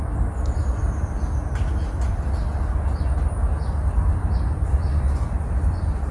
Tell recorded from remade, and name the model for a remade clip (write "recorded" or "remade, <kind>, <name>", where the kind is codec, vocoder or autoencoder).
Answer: recorded